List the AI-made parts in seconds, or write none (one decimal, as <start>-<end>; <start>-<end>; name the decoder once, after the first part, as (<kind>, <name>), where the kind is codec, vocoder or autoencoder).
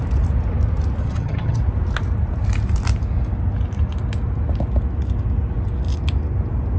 1.0-1.6 (vocoder, HiFi-GAN)